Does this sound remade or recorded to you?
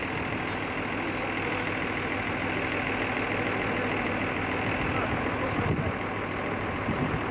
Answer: recorded